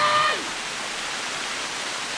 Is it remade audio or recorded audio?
recorded